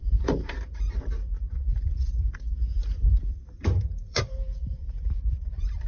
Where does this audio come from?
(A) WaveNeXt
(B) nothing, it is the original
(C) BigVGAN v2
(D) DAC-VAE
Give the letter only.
C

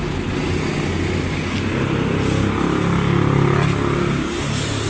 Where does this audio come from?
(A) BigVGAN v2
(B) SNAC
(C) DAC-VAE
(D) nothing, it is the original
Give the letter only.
D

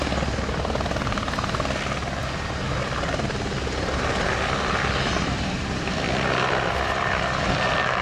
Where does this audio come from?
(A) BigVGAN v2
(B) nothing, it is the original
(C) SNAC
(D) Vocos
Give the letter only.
B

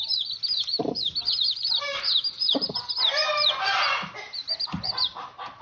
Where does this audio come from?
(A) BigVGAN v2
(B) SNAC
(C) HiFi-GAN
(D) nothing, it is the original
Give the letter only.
A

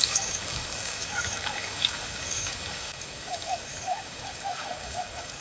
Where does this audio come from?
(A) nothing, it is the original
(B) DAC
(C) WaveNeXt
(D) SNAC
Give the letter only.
B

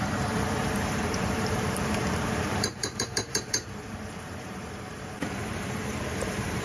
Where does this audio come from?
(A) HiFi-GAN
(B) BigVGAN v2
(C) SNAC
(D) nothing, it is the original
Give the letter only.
B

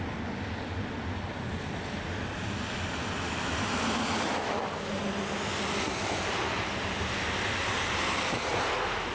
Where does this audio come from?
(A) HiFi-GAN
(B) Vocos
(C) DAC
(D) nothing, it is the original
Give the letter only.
D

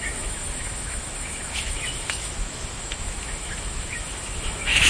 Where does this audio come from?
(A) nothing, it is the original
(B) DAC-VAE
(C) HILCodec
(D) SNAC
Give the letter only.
B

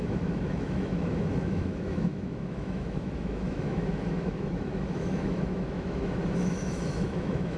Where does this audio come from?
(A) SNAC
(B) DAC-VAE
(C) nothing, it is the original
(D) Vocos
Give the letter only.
B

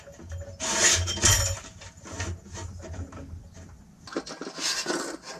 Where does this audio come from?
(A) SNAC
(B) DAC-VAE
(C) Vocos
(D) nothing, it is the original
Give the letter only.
D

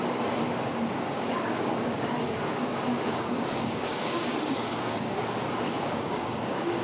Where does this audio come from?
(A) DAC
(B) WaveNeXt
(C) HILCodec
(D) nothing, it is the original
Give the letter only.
A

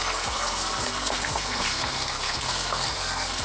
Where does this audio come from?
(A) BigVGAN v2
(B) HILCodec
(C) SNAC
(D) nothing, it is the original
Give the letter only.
C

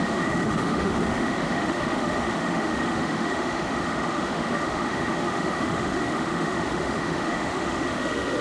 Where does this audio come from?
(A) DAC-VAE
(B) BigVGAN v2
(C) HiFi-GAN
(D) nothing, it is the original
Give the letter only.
A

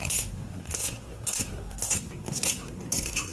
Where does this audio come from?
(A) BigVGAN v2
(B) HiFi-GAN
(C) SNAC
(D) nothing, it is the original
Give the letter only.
C